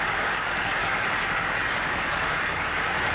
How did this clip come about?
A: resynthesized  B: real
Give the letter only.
A